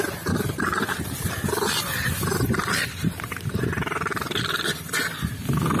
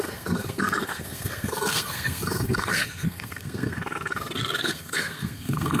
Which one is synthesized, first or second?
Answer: second